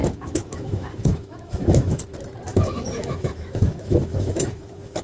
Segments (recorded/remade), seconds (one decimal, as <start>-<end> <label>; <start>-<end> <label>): 0.0-2.0 remade; 2.0-2.5 recorded; 2.5-5.0 remade